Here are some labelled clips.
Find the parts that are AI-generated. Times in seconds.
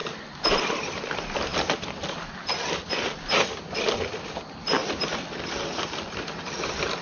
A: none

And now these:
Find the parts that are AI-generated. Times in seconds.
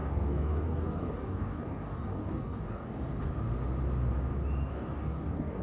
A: 0.0-3.3; 4.7-5.6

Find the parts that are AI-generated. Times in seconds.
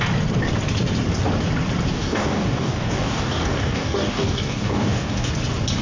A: 1.9-5.3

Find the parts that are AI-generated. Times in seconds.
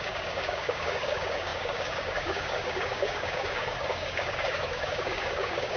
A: 0.0-5.8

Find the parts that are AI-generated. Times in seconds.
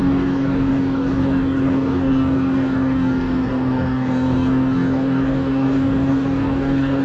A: 0.0-7.0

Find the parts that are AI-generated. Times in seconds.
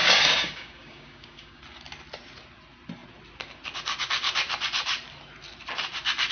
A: 0.0-1.6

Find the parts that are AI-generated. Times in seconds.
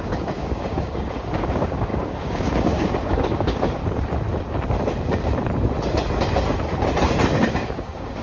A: 0.0-3.8; 7.5-8.2